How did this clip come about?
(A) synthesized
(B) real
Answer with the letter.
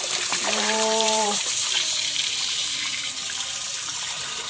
A